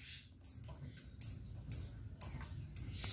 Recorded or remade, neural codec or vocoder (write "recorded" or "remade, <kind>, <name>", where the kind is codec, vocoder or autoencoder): recorded